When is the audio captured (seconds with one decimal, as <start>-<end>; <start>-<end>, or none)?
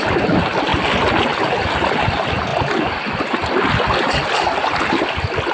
0.0-5.5